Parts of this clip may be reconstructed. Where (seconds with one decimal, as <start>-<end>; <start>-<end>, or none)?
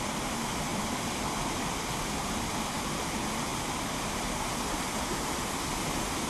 0.7-2.7